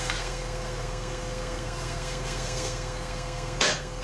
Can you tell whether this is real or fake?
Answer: fake